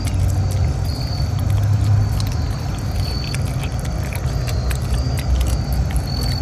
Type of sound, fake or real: real